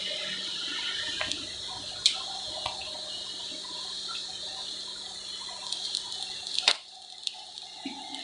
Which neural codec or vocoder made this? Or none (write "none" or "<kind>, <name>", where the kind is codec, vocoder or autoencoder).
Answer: none